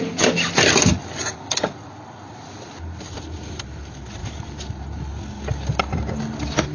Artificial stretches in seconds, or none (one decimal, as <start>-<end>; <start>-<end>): 0.0-6.7

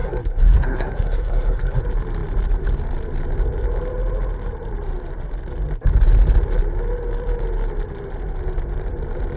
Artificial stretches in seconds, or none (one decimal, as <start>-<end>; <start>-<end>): 0.0-1.8

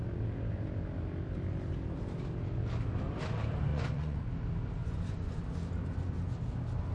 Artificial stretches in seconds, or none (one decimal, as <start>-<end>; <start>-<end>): 3.7-4.3; 4.8-5.4

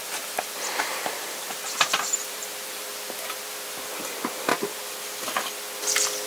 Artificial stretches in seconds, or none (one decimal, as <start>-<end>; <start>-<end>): 0.8-2.9; 3.4-4.5

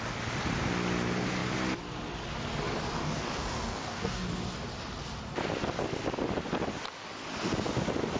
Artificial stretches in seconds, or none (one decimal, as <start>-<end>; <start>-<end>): 3.0-4.3

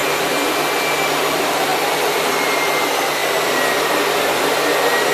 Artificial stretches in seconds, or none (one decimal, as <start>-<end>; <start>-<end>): 1.7-2.4

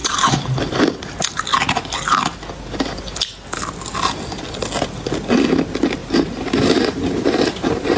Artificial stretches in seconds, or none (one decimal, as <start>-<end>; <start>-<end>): 0.0-0.8; 6.0-8.0

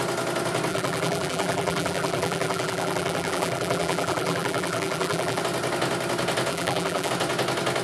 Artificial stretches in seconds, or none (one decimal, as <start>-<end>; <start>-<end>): 0.7-5.4; 6.5-7.1